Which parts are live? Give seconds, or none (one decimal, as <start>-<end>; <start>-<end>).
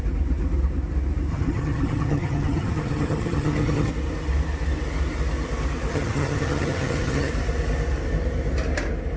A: 0.0-1.3; 3.9-5.9; 7.3-9.2